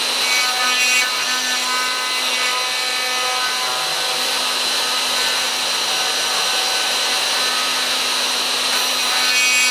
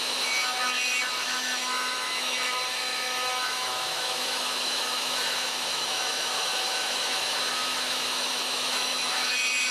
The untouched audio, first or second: first